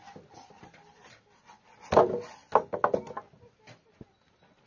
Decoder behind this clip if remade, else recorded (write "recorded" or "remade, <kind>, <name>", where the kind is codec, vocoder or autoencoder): recorded